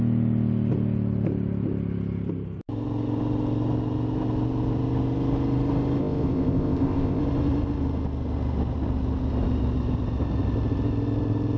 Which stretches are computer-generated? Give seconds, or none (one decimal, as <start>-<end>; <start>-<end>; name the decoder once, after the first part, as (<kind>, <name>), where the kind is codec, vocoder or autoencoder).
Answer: 6.0-7.2 (codec, ZipCodec)